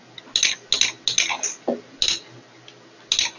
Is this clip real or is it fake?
real